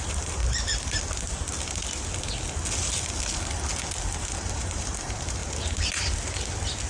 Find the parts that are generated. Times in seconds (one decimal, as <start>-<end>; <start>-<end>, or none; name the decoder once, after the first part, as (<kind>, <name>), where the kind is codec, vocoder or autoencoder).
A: 0.0-0.4 (vocoder, BigVGAN v2); 4.5-5.4

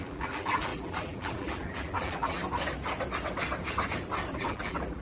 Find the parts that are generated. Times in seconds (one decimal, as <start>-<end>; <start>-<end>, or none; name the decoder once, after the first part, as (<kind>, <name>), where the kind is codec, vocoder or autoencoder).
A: 0.0-2.4 (vocoder, BigVGAN v2); 4.3-5.0